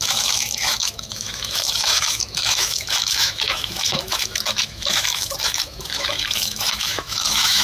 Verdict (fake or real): fake